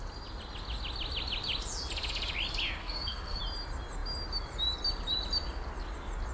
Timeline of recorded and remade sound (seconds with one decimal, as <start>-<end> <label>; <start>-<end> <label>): 0.0-2.8 recorded; 2.8-3.4 remade; 3.4-6.3 recorded